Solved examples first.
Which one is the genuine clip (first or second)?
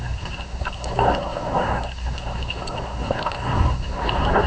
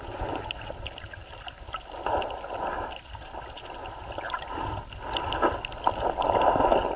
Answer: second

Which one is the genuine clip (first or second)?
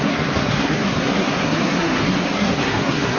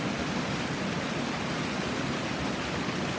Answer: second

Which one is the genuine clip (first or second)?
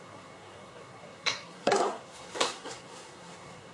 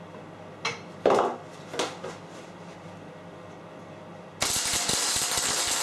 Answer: second